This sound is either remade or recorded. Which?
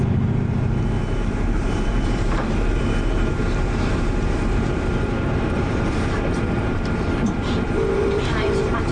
remade